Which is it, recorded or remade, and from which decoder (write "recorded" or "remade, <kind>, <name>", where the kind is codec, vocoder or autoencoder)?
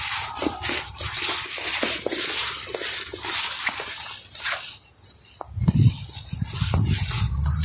recorded